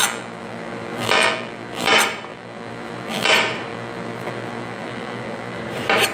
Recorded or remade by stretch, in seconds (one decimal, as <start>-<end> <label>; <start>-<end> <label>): 0.0-1.9 remade; 1.9-2.3 recorded; 2.3-3.3 remade; 3.3-3.7 recorded; 3.7-5.6 remade; 5.6-6.1 recorded